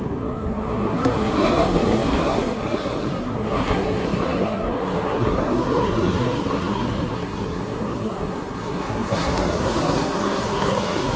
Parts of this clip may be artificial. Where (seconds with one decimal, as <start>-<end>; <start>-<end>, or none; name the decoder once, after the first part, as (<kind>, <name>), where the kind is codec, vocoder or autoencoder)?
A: 0.0-11.2 (codec, SNAC)